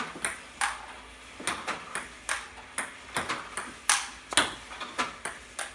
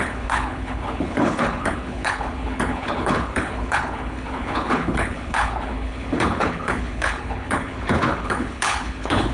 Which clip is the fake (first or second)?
second